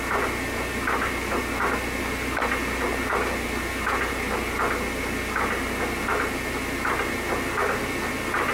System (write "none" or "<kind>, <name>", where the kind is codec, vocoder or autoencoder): none